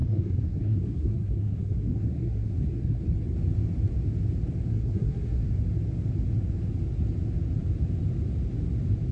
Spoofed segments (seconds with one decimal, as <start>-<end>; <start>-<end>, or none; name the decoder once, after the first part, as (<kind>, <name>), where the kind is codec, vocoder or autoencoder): 0.0-3.0 (codec, SNAC); 4.7-5.5